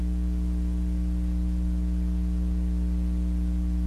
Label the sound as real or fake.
real